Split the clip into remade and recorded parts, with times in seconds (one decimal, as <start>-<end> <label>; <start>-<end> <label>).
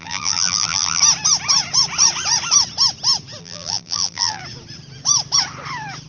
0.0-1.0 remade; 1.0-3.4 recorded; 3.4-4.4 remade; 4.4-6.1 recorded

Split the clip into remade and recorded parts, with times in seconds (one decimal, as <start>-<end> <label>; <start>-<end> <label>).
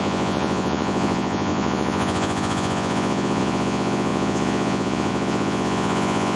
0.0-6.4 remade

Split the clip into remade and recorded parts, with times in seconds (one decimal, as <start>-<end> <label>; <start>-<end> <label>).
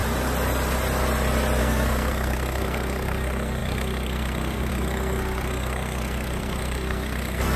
0.0-1.6 recorded; 1.6-7.6 remade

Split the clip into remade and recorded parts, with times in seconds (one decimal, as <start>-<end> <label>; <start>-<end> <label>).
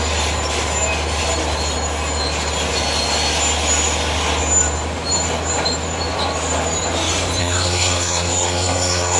0.0-7.4 recorded; 7.4-9.2 remade